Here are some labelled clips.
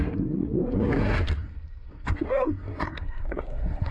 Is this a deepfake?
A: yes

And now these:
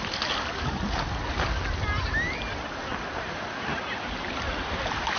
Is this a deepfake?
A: no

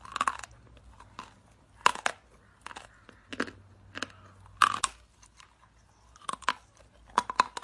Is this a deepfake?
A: no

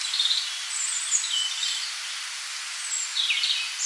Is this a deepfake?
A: no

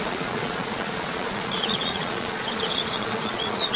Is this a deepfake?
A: yes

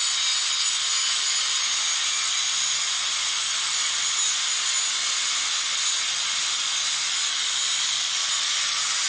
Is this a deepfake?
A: no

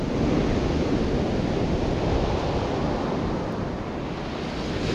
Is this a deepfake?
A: no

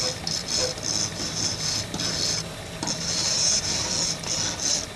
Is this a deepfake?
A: no